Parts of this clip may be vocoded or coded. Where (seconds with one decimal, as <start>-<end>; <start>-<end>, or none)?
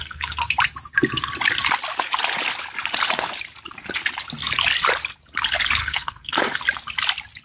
0.0-0.5; 5.8-6.6